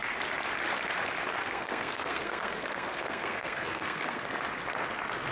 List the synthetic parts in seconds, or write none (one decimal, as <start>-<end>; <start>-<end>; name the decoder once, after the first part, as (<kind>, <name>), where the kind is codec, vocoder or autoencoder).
1.4-4.3 (codec, SNAC)